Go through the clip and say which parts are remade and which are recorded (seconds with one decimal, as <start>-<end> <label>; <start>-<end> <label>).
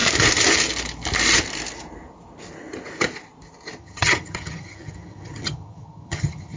0.0-3.8 recorded; 3.8-6.6 remade